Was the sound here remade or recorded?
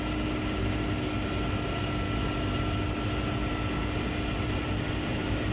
recorded